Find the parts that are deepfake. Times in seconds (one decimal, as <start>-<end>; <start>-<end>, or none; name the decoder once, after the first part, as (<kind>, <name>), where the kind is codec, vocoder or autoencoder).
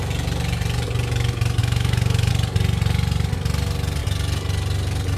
1.6-2.3 (autoencoder, DAC-VAE)